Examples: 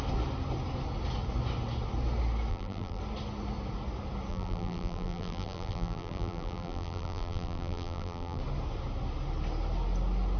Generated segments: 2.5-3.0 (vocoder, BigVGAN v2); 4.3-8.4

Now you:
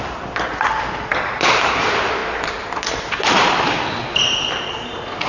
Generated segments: 0.0-2.2 (vocoder, BigVGAN v2); 2.8-5.3

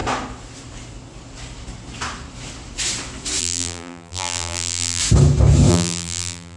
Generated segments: 3.4-5.0 (vocoder, BigVGAN v2); 5.7-6.6

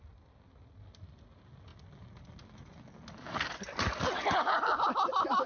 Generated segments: 4.7-5.5 (vocoder, BigVGAN v2)

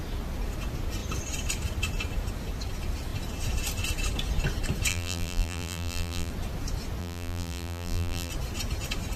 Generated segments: 4.9-6.3 (vocoder, BigVGAN v2); 7.0-8.3

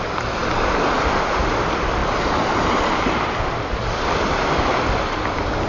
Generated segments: 0.4-1.4 (vocoder, BigVGAN v2)

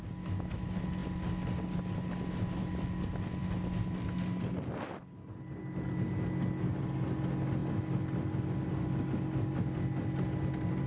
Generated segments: none